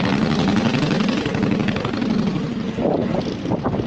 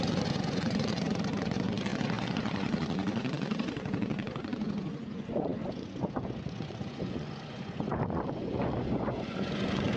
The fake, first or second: second